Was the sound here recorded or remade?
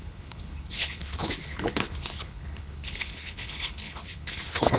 remade